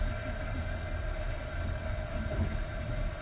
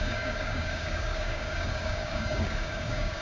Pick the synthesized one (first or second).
second